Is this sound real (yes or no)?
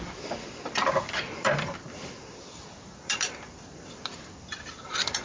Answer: no